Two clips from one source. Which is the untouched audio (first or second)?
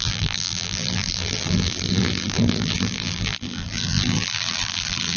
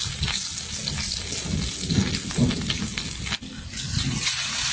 second